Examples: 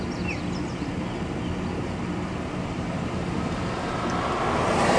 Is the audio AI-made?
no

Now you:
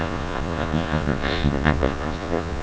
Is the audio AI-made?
yes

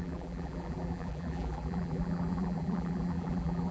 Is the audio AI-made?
yes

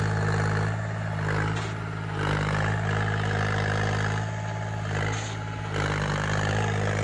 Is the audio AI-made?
no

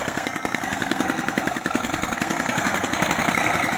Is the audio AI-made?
yes